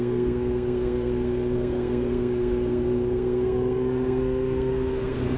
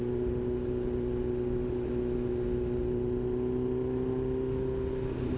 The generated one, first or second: first